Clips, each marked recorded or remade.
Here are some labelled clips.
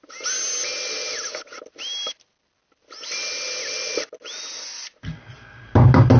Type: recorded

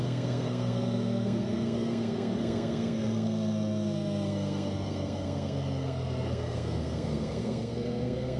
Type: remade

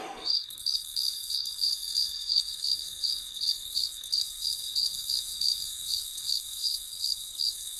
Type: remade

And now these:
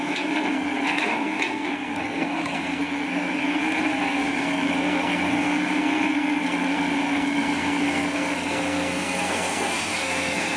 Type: remade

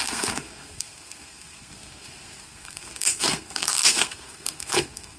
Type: remade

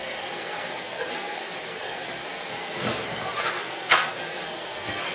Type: remade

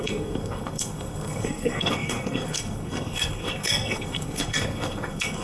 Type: remade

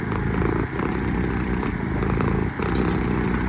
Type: recorded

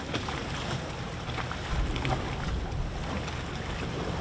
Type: recorded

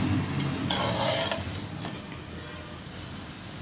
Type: recorded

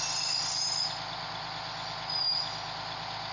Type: recorded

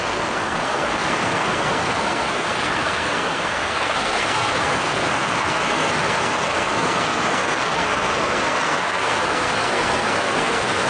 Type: remade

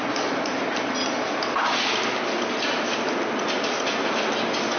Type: recorded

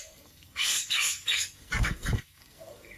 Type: remade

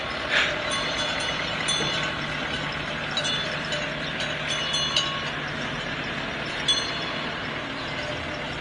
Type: recorded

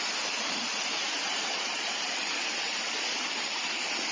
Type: recorded